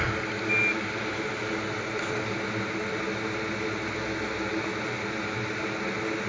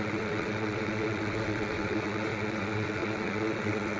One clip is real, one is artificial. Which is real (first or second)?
first